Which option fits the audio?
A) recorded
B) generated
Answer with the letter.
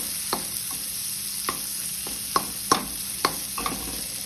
A